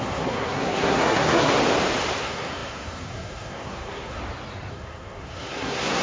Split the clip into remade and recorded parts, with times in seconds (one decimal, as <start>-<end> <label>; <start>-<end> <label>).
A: 0.0-1.6 remade; 1.6-2.2 recorded; 2.2-4.2 remade; 4.2-4.7 recorded; 4.7-6.0 remade